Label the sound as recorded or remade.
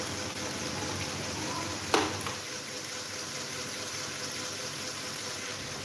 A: recorded